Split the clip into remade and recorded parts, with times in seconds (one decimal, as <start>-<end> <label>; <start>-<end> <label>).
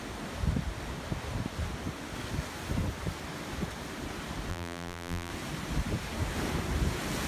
0.0-4.5 recorded; 4.5-5.3 remade; 5.3-7.3 recorded